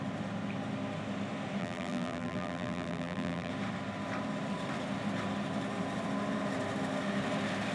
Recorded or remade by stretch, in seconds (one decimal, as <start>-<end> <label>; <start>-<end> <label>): 0.0-1.6 recorded; 1.6-3.5 remade; 3.5-7.7 recorded